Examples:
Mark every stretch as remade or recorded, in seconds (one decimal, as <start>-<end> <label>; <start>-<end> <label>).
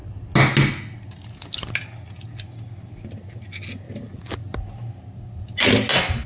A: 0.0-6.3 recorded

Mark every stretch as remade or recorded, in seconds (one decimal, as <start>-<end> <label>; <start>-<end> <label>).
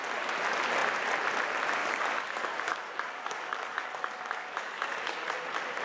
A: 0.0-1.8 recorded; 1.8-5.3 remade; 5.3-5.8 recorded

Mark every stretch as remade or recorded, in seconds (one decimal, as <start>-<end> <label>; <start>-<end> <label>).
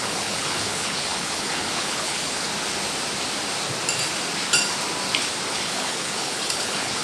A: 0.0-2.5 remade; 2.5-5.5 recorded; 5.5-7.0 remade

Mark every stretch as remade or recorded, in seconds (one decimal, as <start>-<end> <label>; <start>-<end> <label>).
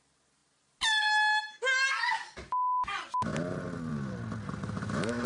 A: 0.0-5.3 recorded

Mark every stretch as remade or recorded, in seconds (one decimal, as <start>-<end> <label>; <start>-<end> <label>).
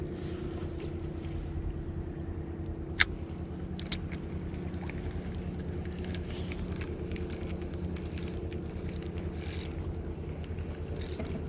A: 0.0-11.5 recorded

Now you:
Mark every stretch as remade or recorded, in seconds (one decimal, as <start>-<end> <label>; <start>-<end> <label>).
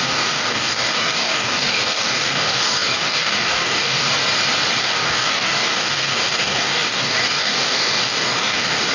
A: 0.0-4.1 remade; 4.1-4.8 recorded; 4.8-8.9 remade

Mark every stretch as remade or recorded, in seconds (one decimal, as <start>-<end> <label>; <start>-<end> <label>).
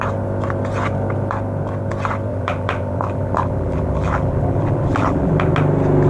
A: 0.0-2.3 recorded; 2.3-5.5 remade; 5.5-6.1 recorded